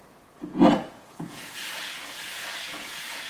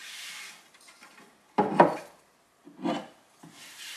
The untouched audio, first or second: second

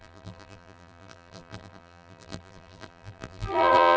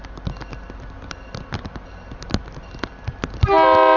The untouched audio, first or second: second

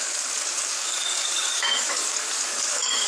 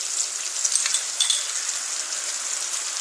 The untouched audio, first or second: second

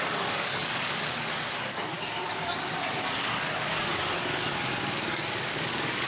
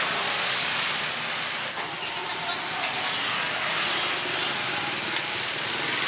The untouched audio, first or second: second